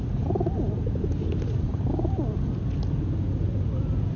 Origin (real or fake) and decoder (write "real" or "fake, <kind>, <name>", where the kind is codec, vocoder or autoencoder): real